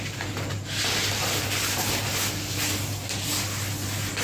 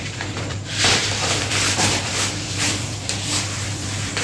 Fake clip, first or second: second